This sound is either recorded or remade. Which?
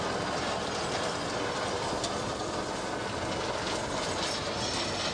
recorded